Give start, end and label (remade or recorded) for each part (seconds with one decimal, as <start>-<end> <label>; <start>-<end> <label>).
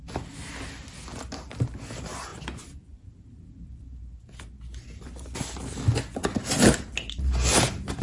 0.0-2.3 recorded; 2.3-3.0 remade; 3.0-8.0 recorded